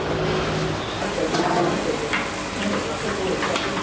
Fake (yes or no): no